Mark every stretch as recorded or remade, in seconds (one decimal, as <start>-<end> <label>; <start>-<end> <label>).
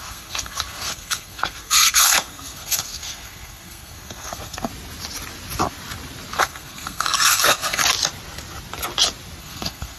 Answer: 0.0-4.7 remade; 4.7-6.4 recorded; 6.4-7.8 remade; 7.8-9.4 recorded; 9.4-10.0 remade